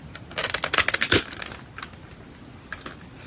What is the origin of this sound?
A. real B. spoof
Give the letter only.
A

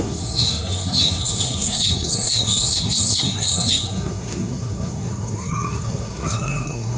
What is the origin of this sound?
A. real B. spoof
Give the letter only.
B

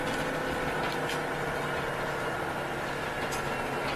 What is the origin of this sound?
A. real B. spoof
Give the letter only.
A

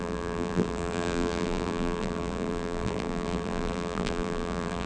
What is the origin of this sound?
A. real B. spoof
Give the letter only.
B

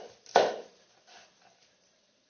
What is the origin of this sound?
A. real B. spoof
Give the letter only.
A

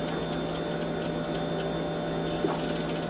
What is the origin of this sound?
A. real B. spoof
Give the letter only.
A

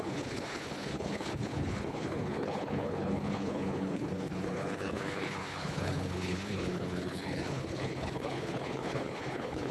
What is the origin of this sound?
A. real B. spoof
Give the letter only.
B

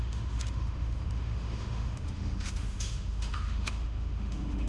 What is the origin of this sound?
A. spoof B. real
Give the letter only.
A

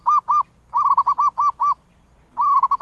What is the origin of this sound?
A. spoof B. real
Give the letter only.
B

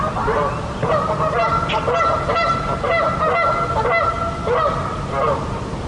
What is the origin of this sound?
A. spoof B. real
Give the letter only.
B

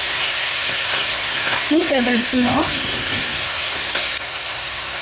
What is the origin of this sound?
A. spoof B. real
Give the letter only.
A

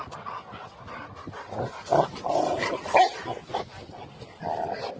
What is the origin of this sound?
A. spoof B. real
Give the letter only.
B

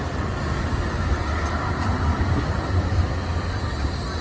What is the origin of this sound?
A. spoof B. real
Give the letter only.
B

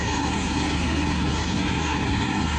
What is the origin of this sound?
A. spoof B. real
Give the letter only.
A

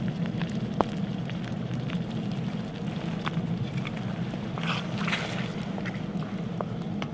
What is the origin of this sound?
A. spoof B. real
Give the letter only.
B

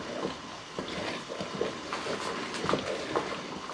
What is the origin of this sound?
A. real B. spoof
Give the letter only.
A